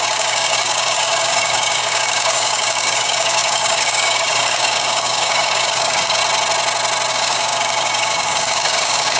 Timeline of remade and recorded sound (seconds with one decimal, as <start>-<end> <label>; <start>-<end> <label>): 0.0-6.2 remade; 6.2-7.1 recorded; 7.1-9.2 remade